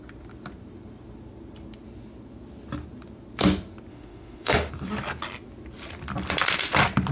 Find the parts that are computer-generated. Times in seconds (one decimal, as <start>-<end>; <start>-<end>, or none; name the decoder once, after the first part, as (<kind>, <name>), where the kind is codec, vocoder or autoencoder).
3.9-4.7 (autoencoder, DAC-VAE)